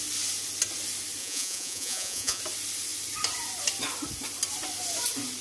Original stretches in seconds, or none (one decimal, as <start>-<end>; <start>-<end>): 0.0-1.2; 2.4-5.4